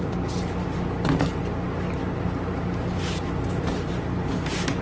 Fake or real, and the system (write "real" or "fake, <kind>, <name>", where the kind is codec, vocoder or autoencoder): real